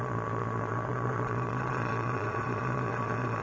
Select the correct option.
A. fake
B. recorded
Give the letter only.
A